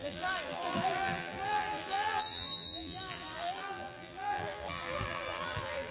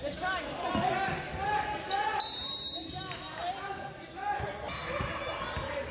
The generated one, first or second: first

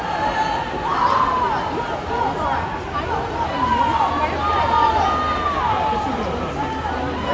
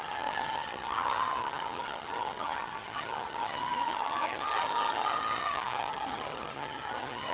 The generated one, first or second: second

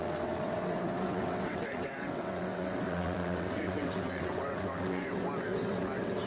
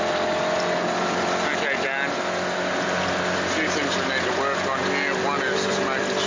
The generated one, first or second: first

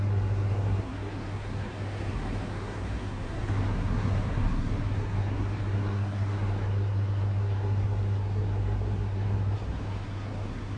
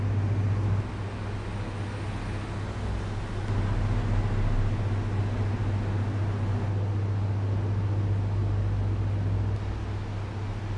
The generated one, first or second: first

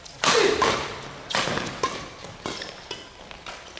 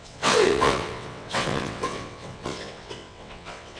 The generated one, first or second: second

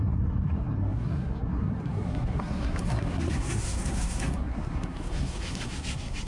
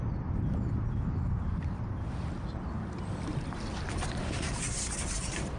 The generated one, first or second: first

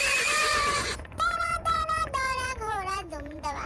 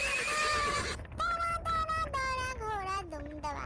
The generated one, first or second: first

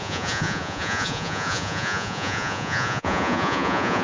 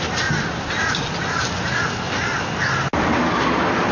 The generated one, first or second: first